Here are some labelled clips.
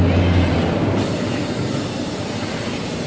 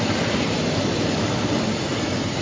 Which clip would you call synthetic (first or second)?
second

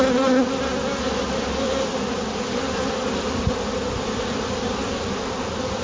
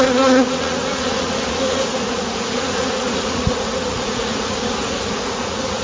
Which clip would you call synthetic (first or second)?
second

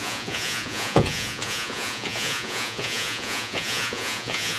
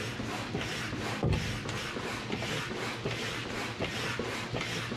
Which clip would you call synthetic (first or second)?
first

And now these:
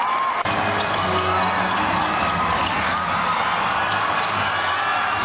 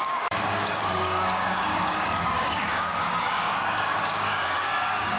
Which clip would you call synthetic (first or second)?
second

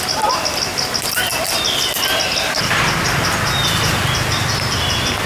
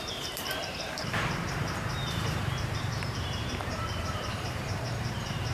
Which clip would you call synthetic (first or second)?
second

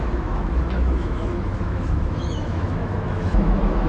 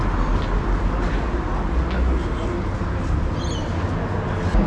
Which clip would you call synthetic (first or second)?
first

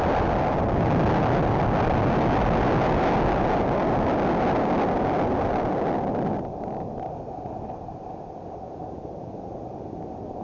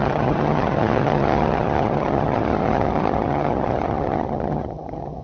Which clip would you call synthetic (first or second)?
second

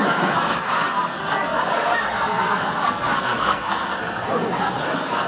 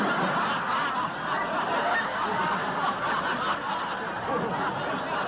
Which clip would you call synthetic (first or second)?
first